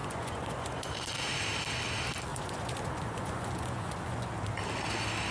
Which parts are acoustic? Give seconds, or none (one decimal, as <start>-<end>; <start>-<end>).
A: 0.9-2.3; 4.3-5.3